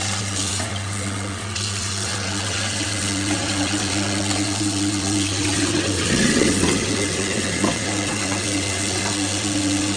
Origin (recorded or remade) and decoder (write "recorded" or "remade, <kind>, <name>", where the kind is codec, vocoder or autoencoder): remade, vocoder, WaveNeXt